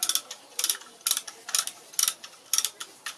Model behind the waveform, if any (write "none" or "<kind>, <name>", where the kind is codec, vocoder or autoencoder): none